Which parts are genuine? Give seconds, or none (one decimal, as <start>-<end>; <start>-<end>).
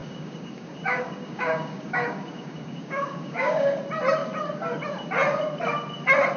3.8-6.4